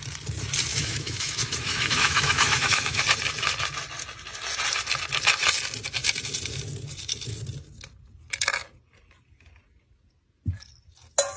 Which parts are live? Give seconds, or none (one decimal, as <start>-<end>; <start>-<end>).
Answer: 0.0-0.7; 3.0-11.4